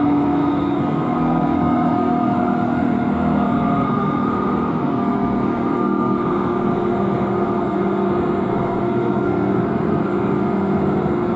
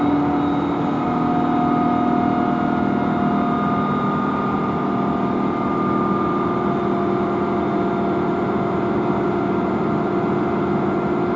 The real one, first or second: second